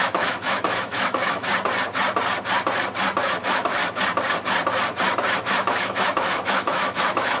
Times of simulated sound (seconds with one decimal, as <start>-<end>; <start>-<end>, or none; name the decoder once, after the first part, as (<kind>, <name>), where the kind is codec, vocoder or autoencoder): 0.0-1.5 (autoencoder, DAC-VAE); 3.2-3.8; 5.4-7.4